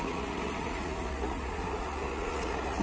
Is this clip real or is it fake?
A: fake